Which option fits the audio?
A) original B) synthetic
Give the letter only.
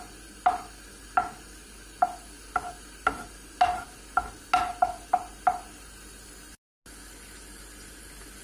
A